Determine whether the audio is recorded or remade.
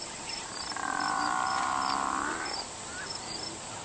remade